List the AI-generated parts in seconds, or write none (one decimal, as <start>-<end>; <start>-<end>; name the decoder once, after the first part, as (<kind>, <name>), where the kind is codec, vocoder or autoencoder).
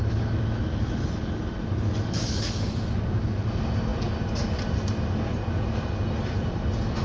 0.7-3.0 (autoencoder, DAC-VAE)